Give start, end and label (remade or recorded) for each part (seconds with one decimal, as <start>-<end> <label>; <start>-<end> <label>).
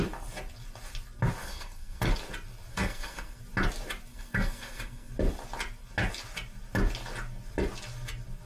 0.0-1.4 recorded; 1.4-2.0 remade; 2.0-2.7 recorded; 2.7-3.4 remade; 3.4-4.1 recorded; 4.1-5.1 remade; 5.1-8.5 recorded